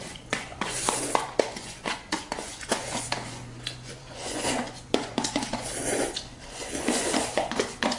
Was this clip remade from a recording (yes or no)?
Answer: yes